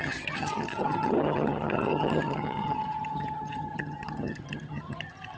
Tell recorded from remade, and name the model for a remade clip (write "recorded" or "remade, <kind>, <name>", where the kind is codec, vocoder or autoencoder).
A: remade, vocoder, HiFi-GAN